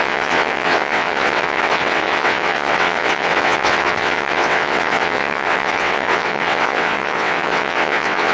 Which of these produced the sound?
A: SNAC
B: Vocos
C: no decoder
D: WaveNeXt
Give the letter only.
D